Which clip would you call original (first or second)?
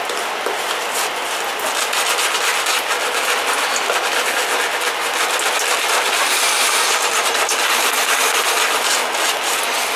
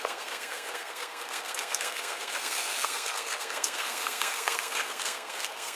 first